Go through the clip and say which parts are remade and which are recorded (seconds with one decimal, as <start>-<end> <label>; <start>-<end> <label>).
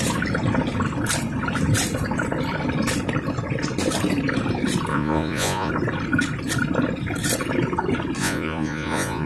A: 0.0-4.9 recorded; 4.9-5.7 remade; 5.7-8.2 recorded; 8.2-9.3 remade